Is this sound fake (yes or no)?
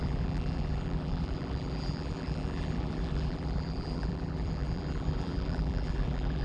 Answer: yes